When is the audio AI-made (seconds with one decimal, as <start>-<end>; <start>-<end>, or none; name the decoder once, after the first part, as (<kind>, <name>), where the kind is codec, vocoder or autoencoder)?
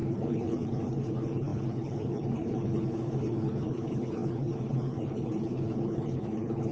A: 0.0-6.7 (codec, HILCodec)